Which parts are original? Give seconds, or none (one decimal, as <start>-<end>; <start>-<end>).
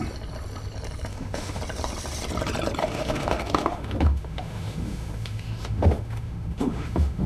0.0-1.1; 1.6-2.8